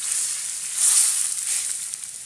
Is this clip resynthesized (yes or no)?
no